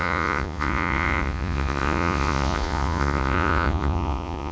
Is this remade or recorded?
remade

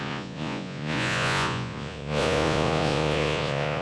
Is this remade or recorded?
remade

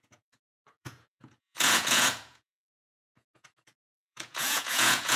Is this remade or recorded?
remade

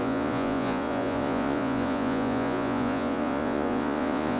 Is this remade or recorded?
remade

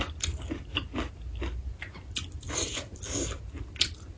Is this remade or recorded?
recorded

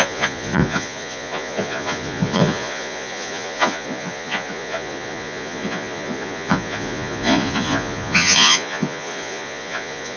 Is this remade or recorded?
remade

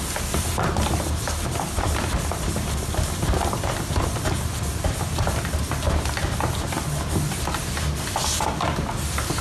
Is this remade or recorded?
recorded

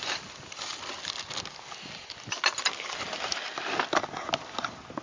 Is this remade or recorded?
recorded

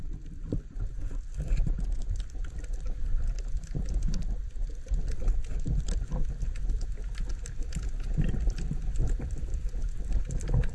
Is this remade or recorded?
recorded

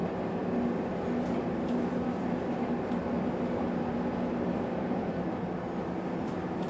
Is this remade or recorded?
recorded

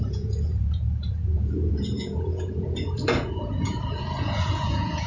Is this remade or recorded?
remade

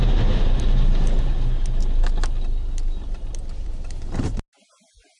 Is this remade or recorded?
recorded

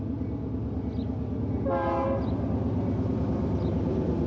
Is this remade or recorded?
recorded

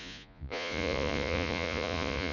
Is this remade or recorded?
remade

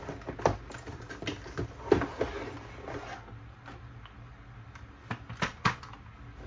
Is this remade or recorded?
recorded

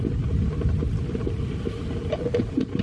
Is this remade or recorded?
recorded